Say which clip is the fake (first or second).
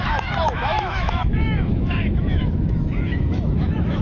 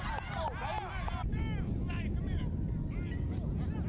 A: first